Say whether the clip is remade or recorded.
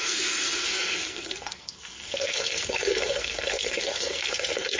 remade